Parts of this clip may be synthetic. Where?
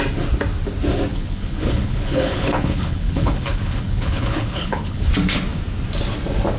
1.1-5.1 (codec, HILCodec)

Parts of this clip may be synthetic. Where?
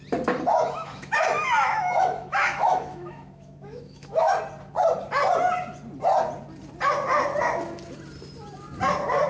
0.5-4.4 (autoencoder, DAC-VAE)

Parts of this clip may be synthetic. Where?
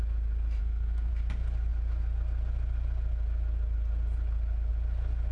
0.6-1.1 (codec, SNAC)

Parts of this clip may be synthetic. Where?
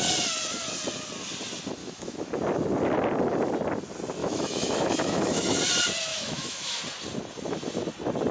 1.8-2.3 (autoencoder, DAC-VAE); 4.2-5.6; 6.1-6.8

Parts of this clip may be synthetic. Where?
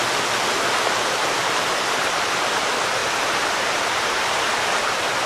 1.4-3.0 (vocoder, BigVGAN v2); 3.5-5.3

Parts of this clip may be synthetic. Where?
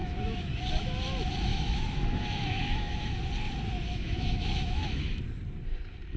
0.0-0.5 (autoencoder, DAC-VAE); 1.5-3.2; 3.9-5.2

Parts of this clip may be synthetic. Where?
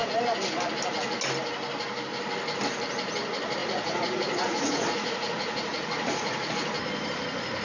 3.6-6.5 (vocoder, Vocos)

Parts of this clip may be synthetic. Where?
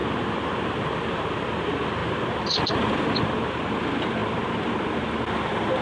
none